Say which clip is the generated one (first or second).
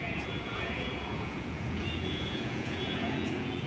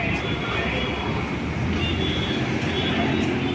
first